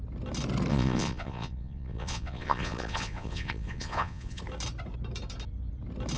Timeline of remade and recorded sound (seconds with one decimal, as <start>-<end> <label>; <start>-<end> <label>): 0.0-0.7 recorded; 0.7-4.4 remade; 4.4-6.2 recorded